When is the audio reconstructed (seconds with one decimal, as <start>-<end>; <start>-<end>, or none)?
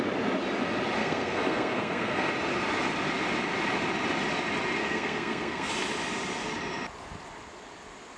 1.0-2.3; 4.8-5.7